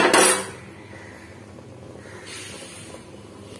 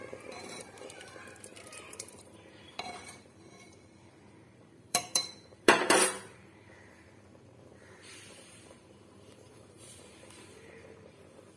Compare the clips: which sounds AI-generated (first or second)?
second